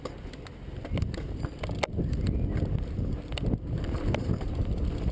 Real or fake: real